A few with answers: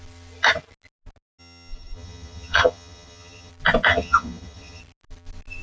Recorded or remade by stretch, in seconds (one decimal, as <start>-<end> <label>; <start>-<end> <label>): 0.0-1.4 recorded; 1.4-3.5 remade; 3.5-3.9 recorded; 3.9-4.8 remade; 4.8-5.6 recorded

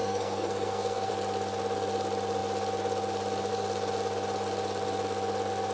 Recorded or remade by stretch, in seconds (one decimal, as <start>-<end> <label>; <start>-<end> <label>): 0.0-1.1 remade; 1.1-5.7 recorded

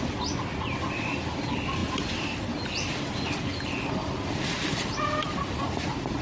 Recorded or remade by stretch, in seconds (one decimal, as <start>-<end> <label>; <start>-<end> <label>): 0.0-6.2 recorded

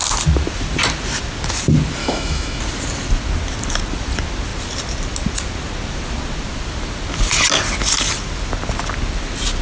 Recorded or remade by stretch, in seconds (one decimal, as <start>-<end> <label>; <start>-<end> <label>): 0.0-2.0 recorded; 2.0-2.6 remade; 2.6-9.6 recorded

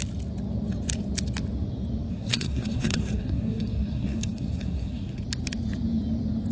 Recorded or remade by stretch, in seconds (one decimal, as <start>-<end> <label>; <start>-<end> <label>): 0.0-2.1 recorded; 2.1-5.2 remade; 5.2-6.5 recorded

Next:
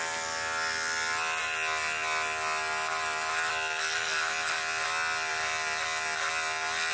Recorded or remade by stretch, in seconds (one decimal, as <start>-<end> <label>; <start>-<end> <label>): 0.0-6.9 recorded

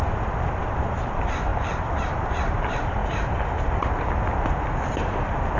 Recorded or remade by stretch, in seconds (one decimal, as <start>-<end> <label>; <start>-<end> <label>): 0.0-3.0 remade; 3.0-5.6 recorded

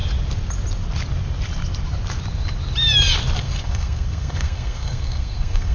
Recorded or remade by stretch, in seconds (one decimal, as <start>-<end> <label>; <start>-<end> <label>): 0.0-3.4 recorded; 3.4-5.7 remade